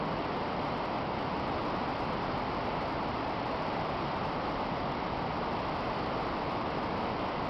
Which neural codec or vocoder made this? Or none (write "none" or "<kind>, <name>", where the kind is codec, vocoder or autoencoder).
none